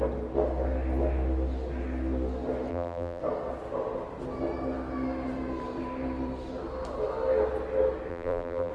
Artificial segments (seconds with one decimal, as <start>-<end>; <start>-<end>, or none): 2.7-3.2; 8.1-8.7